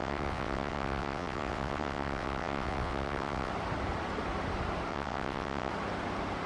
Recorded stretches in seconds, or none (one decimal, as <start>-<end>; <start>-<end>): 3.5-4.9; 5.7-6.5